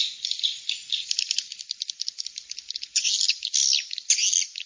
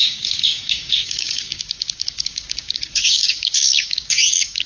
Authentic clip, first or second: first